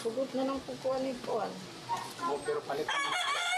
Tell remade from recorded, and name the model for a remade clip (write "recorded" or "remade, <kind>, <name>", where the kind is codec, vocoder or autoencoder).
recorded